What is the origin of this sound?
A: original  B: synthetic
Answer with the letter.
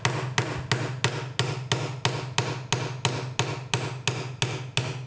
A